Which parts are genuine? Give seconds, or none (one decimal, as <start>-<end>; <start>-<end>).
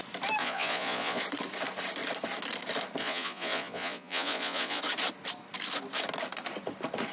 0.0-0.4; 1.2-3.0; 4.8-7.1